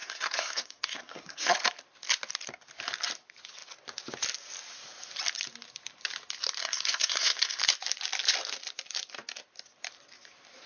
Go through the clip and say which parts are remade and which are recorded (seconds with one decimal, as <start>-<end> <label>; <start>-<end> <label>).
0.0-1.4 remade; 1.4-6.6 recorded; 6.6-7.6 remade; 7.6-10.7 recorded